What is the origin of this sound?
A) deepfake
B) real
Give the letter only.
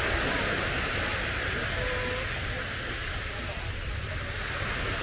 B